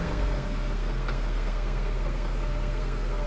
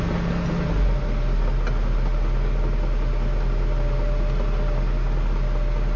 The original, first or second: second